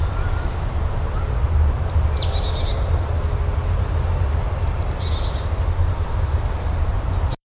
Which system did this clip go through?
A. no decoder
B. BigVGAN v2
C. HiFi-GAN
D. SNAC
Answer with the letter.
A